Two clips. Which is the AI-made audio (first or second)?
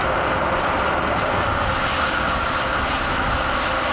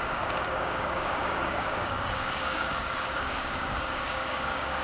second